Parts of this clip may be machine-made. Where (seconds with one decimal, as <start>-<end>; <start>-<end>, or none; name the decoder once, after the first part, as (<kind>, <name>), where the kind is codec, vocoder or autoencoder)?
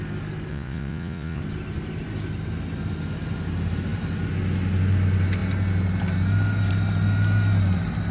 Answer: 0.5-1.4 (vocoder, Vocos)